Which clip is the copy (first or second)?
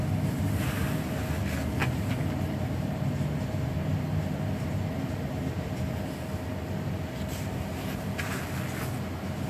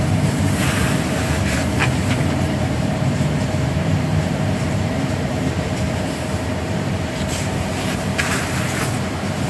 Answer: second